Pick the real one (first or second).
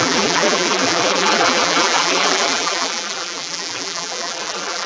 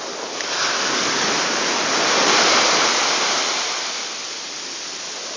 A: second